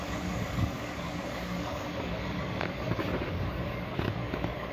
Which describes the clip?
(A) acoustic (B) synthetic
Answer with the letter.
B